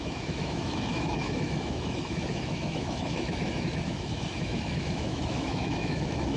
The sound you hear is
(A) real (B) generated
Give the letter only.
B